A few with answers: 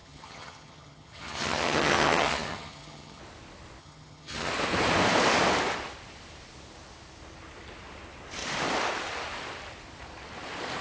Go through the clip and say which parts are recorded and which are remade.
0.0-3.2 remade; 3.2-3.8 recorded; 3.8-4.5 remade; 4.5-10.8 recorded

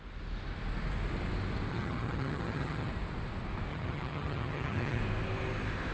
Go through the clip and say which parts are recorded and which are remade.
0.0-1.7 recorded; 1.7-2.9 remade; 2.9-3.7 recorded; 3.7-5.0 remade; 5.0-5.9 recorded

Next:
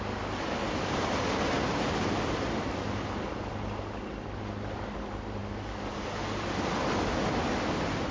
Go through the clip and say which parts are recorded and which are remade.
0.0-8.1 recorded